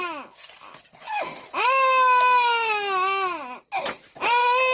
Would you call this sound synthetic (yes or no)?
no